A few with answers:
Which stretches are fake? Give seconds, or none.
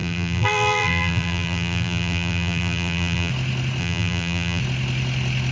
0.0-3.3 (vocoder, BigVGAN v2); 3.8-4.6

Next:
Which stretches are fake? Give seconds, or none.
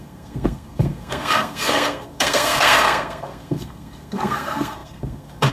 0.0-5.5 (codec, SNAC)